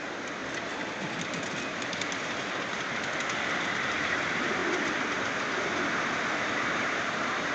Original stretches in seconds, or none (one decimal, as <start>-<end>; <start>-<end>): 0.0-0.4; 4.1-4.6